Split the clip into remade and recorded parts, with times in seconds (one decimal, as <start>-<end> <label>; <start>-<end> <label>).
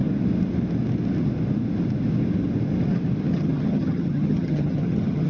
0.0-3.3 recorded; 3.3-5.3 remade